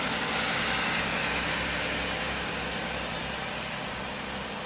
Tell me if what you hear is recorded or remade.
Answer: recorded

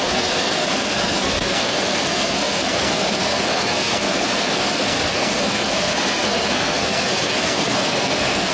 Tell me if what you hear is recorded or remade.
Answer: remade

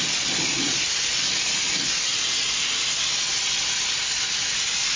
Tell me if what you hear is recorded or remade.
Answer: recorded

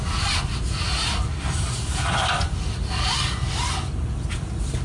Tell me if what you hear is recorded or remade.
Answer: recorded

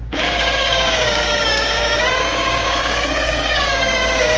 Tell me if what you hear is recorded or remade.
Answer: remade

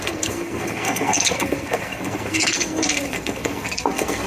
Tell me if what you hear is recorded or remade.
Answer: remade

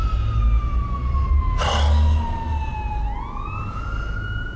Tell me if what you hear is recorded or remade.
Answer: recorded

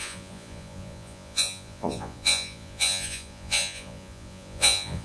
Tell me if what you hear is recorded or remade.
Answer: remade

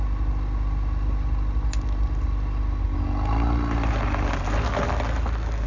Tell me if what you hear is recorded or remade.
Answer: recorded